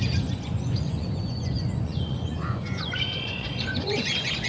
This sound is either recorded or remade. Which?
remade